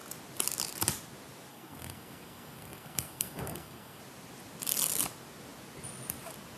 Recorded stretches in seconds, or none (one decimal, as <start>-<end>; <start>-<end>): 0.0-1.5; 4.0-6.6